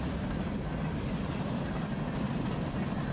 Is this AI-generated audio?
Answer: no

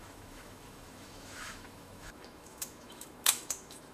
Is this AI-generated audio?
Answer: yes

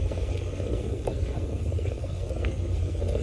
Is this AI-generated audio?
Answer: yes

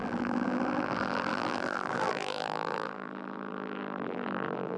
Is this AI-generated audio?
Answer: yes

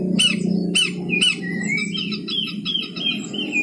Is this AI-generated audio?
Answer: no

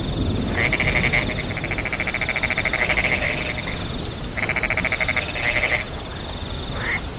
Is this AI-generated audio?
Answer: no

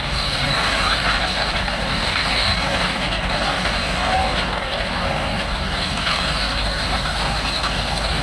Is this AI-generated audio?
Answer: yes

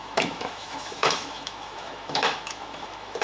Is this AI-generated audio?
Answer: yes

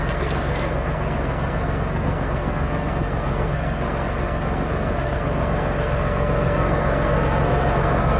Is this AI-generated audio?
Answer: yes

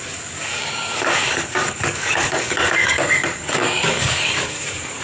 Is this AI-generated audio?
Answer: yes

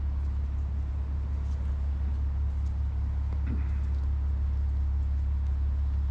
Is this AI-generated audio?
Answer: no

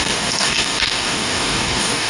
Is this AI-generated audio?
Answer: yes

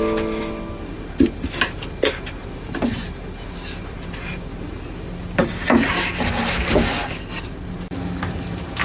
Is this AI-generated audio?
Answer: no